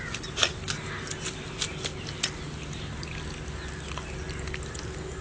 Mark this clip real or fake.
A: real